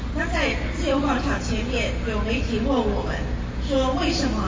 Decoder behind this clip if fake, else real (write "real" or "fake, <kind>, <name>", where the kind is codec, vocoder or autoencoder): real